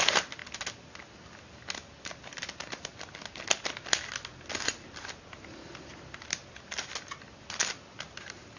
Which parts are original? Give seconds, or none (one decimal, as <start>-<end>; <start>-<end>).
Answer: 0.0-8.6